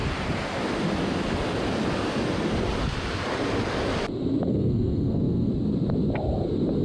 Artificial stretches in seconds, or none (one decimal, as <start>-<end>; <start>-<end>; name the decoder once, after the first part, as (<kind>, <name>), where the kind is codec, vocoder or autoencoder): 4.5-5.5 (codec, SNAC)